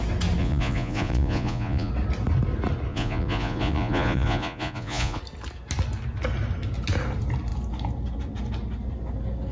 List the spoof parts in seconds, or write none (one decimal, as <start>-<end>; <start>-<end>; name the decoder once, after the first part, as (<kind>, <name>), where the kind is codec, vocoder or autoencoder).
0.4-1.9 (vocoder, Vocos); 2.9-5.2

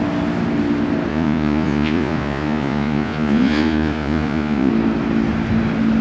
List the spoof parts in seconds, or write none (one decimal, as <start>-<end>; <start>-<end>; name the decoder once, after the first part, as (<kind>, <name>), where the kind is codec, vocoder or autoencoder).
1.1-4.7 (vocoder, Vocos)

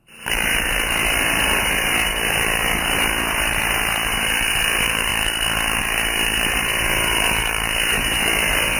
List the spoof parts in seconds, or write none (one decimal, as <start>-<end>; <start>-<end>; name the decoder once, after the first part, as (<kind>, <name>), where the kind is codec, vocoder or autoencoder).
0.0-5.1 (vocoder, BigVGAN v2); 5.8-8.8